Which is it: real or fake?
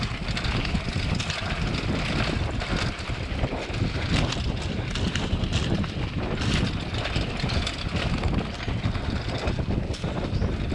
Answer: real